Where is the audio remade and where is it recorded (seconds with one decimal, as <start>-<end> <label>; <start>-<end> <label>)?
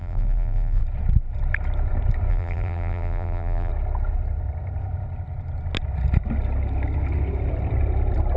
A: 0.0-0.8 remade; 0.8-2.3 recorded; 2.3-3.7 remade; 3.7-8.4 recorded